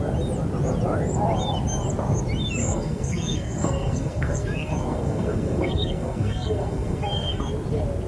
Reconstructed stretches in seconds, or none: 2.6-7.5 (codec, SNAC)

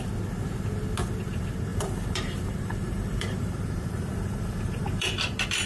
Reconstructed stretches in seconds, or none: 1.7-5.1 (vocoder, BigVGAN v2)

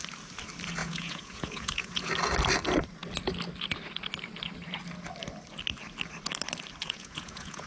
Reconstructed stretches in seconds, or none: 0.8-2.1 (vocoder, Vocos); 6.8-7.7

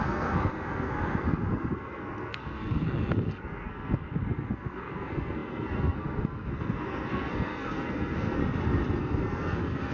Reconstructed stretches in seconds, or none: 0.0-8.4 (codec, SNAC); 9.0-9.9

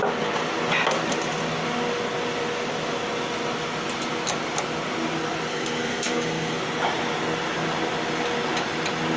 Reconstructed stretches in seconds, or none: 5.5-6.6 (codec, SNAC)

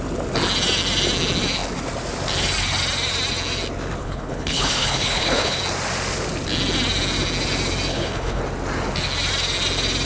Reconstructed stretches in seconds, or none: 4.0-5.6 (codec, HILCodec); 7.9-8.4

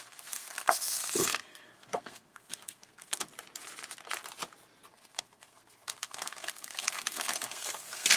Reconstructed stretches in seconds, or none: 0.0-3.2 (codec, SNAC); 4.9-8.2

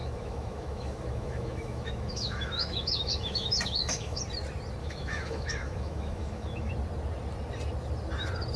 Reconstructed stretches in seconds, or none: 0.0-4.2 (autoencoder, DAC-VAE); 4.8-6.7